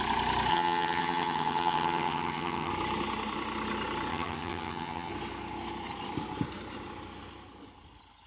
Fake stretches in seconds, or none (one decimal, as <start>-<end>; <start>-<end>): 0.5-2.7; 4.1-5.1